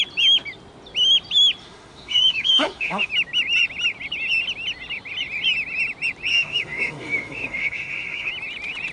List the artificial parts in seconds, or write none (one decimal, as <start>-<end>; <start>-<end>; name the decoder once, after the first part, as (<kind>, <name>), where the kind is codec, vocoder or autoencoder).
1.6-3.1 (autoencoder, DAC-VAE); 6.3-8.3